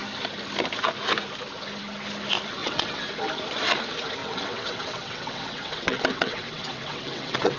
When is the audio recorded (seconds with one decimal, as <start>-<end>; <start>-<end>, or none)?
0.0-2.6; 3.1-4.2